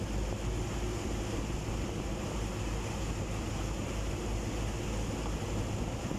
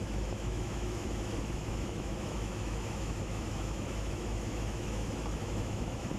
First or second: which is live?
first